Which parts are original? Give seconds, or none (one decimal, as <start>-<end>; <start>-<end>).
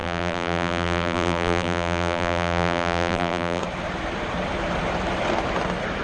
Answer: 3.6-6.0